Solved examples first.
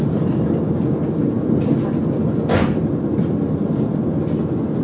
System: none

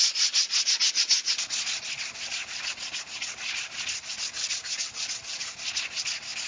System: none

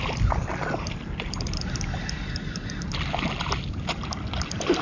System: none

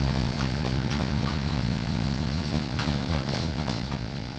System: vocoder, Vocos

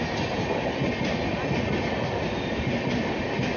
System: none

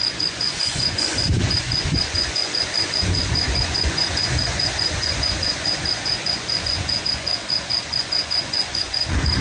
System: vocoder, Vocos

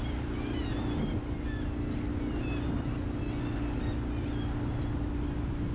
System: none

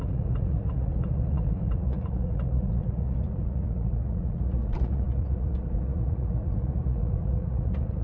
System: vocoder, Vocos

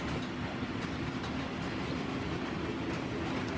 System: none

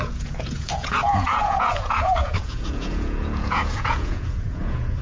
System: vocoder, Vocos